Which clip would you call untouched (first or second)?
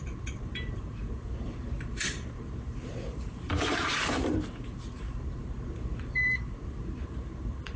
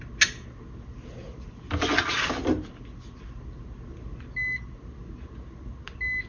second